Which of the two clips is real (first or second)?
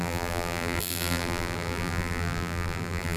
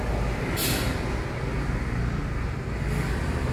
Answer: second